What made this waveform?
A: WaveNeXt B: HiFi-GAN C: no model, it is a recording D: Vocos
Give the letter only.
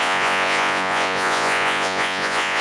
D